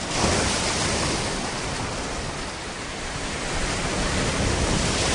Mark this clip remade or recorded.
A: recorded